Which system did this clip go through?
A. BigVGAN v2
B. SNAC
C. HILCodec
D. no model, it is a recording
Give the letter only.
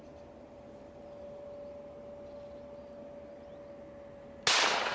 D